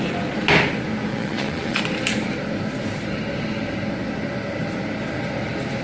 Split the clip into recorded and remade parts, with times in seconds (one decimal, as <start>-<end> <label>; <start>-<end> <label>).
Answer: 0.0-1.1 recorded; 1.1-1.8 remade; 1.8-5.8 recorded